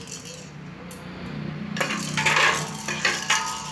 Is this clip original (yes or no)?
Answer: yes